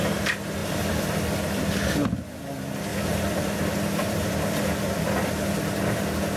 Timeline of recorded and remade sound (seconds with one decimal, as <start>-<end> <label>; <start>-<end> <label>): 0.0-0.6 recorded; 0.6-1.4 remade; 1.4-2.9 recorded; 2.9-5.0 remade; 5.0-6.4 recorded